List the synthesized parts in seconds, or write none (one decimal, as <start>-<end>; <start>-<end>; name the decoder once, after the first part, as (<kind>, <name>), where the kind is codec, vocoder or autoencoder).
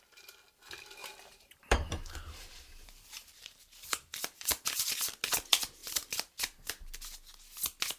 1.0-4.9 (vocoder, BigVGAN v2); 5.8-6.7